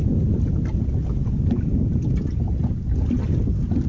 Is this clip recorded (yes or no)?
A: yes